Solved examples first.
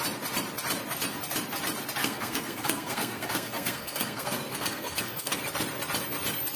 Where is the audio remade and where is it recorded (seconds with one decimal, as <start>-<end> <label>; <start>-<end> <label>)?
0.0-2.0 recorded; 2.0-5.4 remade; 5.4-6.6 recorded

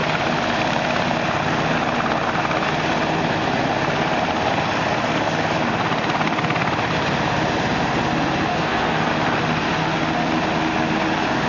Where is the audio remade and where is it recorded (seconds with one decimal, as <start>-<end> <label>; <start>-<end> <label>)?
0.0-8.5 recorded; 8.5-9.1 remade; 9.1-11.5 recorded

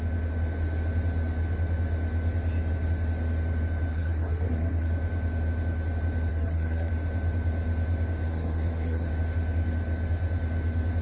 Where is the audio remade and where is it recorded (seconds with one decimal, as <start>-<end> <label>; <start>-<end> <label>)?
0.0-3.9 recorded; 3.9-4.9 remade; 4.9-6.3 recorded; 6.3-6.9 remade; 6.9-8.3 recorded; 8.3-9.1 remade; 9.1-11.0 recorded

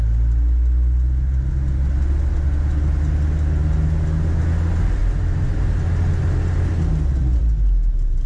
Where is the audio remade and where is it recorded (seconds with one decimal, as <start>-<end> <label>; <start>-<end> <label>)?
0.0-8.3 recorded

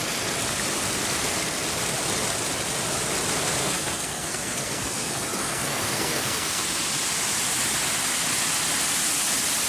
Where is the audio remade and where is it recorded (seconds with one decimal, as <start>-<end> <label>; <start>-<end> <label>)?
0.0-3.6 recorded; 3.6-6.6 remade; 6.6-9.7 recorded